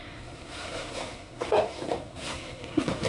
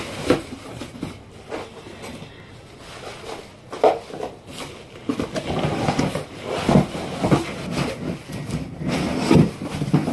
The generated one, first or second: first